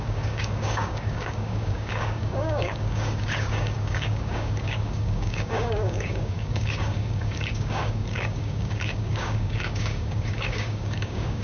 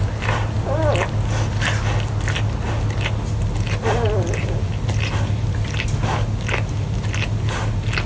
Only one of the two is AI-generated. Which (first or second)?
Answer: first